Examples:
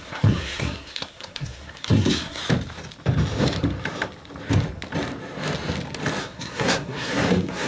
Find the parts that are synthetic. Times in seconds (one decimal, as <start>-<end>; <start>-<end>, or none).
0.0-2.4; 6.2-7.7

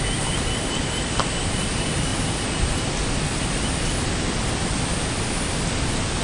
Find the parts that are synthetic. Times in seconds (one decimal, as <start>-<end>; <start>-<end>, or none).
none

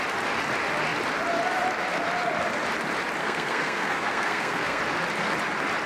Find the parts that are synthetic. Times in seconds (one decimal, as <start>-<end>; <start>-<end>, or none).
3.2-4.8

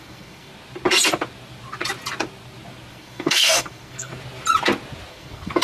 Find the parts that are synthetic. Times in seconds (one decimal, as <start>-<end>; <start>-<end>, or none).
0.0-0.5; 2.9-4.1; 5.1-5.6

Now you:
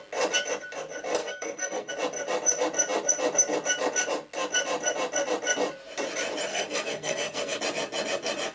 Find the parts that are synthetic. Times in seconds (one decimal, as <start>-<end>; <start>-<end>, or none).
1.2-1.9; 6.5-7.6

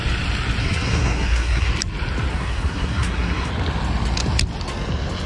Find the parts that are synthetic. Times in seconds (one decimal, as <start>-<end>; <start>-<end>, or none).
0.6-1.7; 2.3-3.5

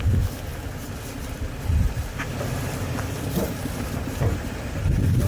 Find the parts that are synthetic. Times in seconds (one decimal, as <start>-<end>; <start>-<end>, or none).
none

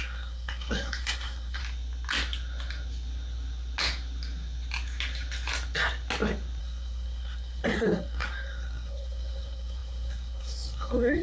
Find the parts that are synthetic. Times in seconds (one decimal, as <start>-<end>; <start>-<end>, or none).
0.0-1.6; 6.6-11.2